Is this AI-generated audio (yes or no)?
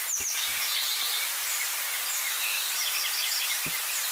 yes